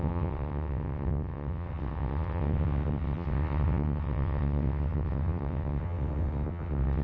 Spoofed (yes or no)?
yes